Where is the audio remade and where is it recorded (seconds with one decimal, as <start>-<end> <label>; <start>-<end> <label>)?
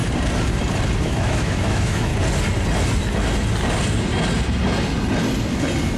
0.0-1.0 recorded; 1.0-2.1 remade; 2.1-6.0 recorded